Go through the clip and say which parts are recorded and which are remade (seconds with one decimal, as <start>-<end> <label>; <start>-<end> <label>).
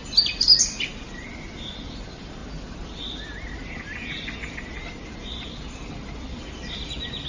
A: 0.0-7.3 recorded